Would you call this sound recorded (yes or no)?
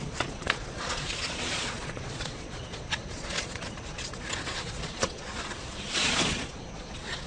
no